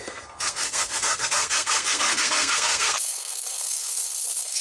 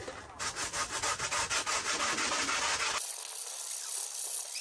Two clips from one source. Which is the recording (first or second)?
second